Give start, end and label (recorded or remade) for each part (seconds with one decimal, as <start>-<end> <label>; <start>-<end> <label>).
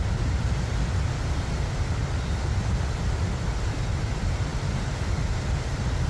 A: 0.0-6.1 recorded